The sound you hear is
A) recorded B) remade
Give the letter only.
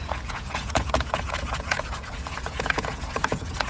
B